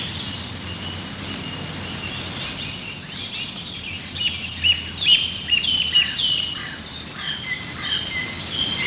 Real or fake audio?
real